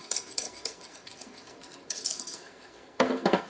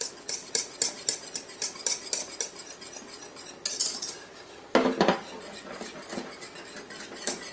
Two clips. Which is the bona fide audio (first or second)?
second